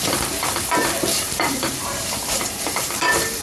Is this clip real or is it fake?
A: fake